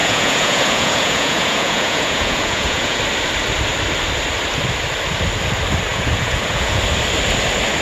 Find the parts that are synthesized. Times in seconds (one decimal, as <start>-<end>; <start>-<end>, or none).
0.0-3.0; 5.9-6.8